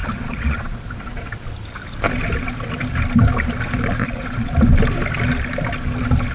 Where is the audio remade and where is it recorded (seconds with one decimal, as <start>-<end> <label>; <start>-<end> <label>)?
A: 0.0-1.2 remade; 1.2-4.0 recorded; 4.0-4.5 remade; 4.5-6.3 recorded